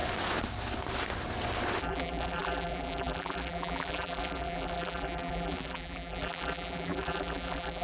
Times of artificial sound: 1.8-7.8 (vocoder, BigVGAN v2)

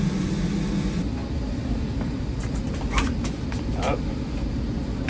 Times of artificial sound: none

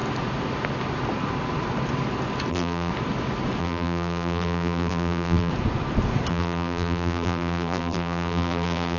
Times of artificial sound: 2.5-2.9 (vocoder, BigVGAN v2); 3.6-5.5; 6.3-9.0